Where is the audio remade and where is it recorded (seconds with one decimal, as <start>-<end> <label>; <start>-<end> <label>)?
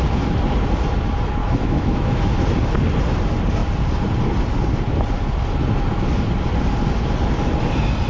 0.0-1.4 recorded; 1.4-2.4 remade; 2.4-8.1 recorded